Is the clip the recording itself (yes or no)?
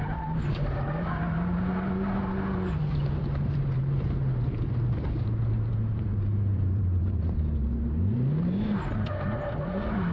no